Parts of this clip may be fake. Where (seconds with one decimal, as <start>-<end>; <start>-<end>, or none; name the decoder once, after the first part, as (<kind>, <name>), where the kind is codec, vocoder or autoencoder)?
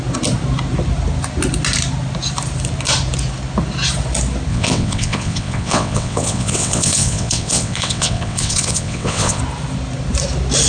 4.5-9.4 (vocoder, WaveNeXt)